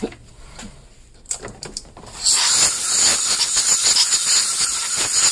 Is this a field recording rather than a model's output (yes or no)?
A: yes